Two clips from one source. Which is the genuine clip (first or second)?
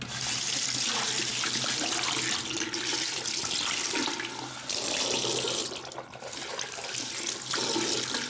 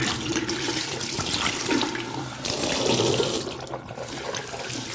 first